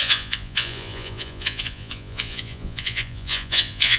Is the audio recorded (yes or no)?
no